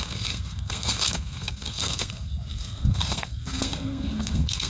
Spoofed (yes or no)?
yes